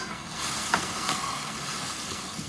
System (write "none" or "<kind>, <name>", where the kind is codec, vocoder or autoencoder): codec, SNAC